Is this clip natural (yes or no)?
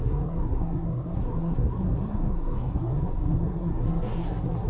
no